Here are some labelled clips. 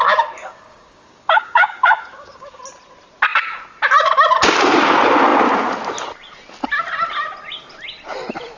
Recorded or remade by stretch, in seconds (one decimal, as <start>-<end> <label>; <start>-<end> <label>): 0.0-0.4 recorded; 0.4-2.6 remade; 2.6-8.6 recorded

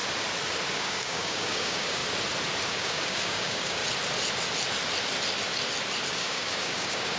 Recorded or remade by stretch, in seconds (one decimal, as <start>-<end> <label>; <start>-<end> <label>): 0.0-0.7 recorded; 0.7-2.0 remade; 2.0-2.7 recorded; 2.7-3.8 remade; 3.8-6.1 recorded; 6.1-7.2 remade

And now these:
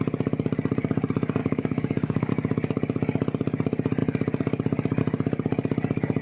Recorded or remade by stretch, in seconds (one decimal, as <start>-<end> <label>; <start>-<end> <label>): 0.0-1.4 recorded; 1.4-2.3 remade; 2.3-6.2 recorded

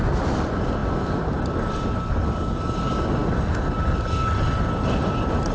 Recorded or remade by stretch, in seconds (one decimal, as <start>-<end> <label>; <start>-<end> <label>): 0.0-5.5 recorded

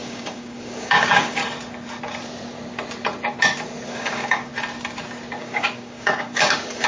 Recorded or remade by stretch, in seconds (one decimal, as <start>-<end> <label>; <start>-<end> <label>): 0.0-1.4 remade; 1.4-3.9 recorded; 3.9-4.5 remade; 4.5-5.4 recorded; 5.4-6.9 remade

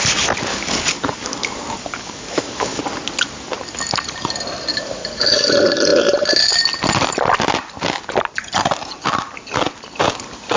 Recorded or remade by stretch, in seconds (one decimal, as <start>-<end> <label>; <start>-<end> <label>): 0.0-0.5 recorded; 0.5-2.8 remade; 2.8-4.7 recorded; 4.7-5.5 remade; 5.5-10.6 recorded

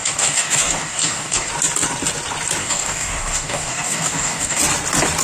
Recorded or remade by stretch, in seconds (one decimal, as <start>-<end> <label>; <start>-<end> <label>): 0.0-1.5 remade; 1.5-2.6 recorded; 2.6-4.6 remade; 4.6-5.2 recorded

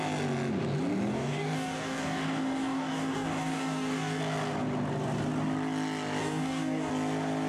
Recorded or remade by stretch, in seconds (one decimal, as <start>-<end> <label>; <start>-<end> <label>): 0.0-1.1 recorded; 1.1-4.2 remade; 4.2-6.2 recorded; 6.2-6.9 remade; 6.9-7.5 recorded